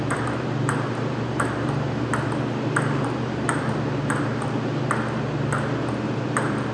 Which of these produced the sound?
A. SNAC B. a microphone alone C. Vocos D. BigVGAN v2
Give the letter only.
D